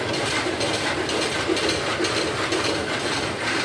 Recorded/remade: recorded